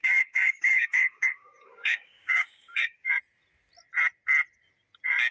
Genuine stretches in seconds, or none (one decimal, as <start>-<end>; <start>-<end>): 3.1-5.3